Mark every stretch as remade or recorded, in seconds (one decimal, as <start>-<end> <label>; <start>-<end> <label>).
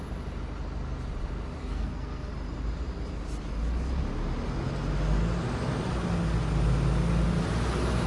0.0-1.6 recorded; 1.6-2.3 remade; 2.3-8.1 recorded